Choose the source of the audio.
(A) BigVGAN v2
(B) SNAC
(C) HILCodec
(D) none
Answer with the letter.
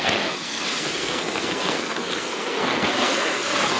B